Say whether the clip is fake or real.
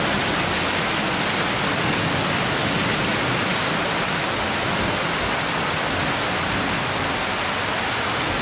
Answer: real